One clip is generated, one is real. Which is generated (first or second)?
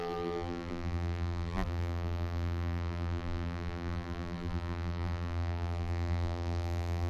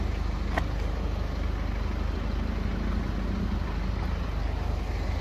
first